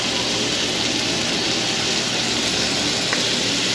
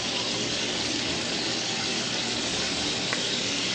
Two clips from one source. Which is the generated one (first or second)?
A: second